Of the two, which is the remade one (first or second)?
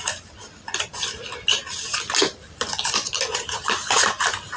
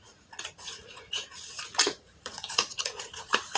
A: second